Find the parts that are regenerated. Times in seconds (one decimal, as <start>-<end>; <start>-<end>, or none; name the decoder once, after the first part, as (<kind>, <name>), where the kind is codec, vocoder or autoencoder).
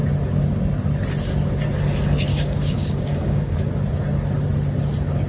2.3-3.7 (codec, DAC)